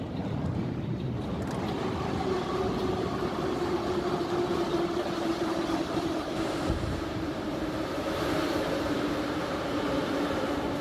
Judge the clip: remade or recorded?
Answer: remade